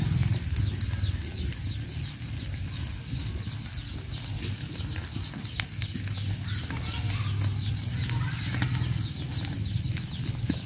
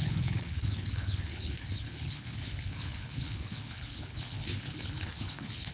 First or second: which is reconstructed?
second